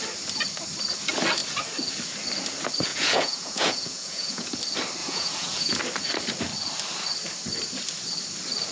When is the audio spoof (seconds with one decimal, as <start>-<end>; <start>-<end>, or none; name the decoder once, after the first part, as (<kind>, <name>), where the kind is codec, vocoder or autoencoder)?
2.9-4.6 (vocoder, Vocos); 5.0-5.8